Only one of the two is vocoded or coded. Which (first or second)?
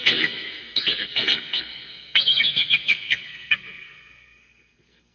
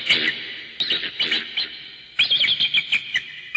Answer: first